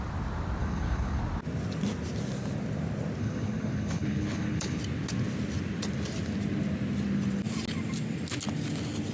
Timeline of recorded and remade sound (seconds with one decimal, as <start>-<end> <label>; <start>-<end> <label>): 0.0-0.6 recorded; 0.6-1.2 remade; 1.2-3.2 recorded; 3.2-4.8 remade; 4.8-9.1 recorded